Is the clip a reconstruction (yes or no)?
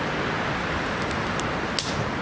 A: no